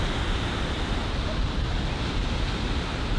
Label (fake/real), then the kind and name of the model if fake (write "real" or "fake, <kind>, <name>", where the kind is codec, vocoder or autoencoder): real